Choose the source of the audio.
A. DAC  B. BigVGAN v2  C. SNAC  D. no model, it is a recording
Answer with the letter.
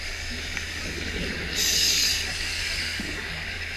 A